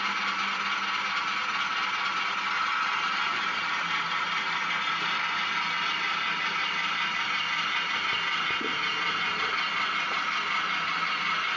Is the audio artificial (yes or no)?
no